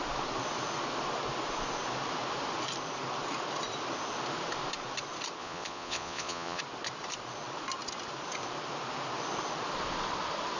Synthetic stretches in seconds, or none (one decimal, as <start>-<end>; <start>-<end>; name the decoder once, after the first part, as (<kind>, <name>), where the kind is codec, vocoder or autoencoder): 5.4-6.6 (vocoder, Vocos)